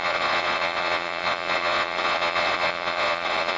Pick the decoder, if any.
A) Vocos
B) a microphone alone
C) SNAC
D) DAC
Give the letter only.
A